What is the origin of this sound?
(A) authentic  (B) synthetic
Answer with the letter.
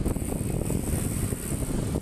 A